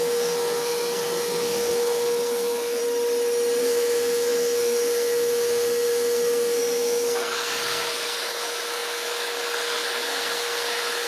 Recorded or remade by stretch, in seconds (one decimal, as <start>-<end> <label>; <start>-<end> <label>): 0.0-2.8 remade; 2.8-3.6 recorded; 3.6-11.1 remade